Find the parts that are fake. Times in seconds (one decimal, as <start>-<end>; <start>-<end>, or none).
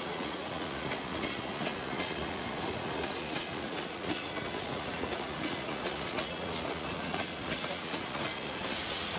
0.0-9.2